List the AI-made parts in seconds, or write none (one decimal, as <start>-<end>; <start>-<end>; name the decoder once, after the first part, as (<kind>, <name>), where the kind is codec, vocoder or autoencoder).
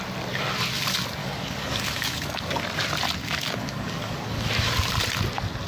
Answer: 1.2-2.6 (codec, DAC); 3.2-4.5